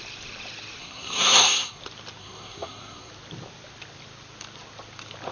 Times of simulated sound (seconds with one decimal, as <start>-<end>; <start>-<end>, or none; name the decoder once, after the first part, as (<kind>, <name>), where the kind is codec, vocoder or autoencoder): 0.8-1.8 (codec, SNAC); 2.2-3.1

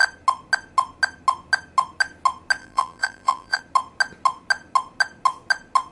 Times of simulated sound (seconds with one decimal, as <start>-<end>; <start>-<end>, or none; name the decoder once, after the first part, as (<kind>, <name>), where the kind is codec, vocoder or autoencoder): 2.6-3.6 (vocoder, BigVGAN v2)

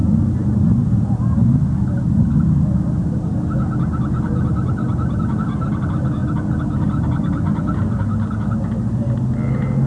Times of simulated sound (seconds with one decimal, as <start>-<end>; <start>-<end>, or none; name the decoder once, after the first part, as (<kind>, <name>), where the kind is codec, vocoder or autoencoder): none

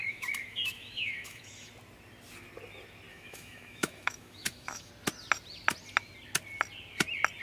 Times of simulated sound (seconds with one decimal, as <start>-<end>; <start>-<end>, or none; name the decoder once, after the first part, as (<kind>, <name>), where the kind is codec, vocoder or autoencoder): 0.0-1.7 (autoencoder, DAC-VAE); 3.1-4.9

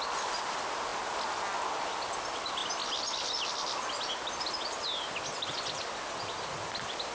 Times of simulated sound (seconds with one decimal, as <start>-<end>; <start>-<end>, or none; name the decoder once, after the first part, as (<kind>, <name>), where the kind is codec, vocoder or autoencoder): none

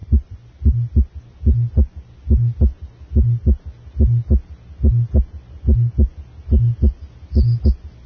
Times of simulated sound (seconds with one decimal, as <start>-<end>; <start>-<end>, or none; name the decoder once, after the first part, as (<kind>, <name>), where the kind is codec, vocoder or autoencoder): 0.0-1.2 (vocoder, BigVGAN v2)

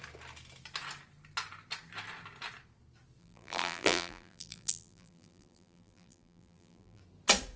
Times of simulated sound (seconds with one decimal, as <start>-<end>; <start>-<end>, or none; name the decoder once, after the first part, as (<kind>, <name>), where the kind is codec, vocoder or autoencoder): 3.2-7.0 (vocoder, BigVGAN v2)

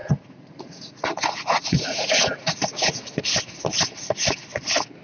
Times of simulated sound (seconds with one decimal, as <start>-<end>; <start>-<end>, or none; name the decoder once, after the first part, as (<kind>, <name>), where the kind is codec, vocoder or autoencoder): 0.0-3.0 (vocoder, Vocos)